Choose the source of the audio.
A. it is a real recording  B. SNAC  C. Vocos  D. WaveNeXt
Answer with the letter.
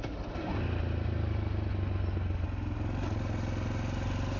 A